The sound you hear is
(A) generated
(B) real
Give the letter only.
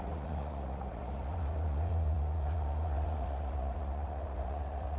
A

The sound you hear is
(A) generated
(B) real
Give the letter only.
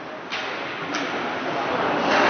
B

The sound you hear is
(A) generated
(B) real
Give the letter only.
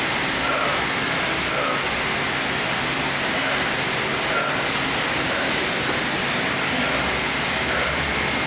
B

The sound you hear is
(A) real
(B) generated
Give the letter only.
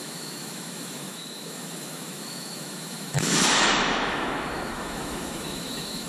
B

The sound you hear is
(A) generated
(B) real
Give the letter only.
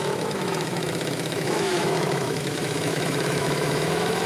A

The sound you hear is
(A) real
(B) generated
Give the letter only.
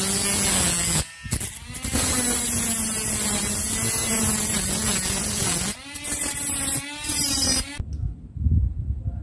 A